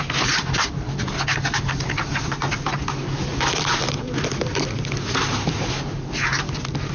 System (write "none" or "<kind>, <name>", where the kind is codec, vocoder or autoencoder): none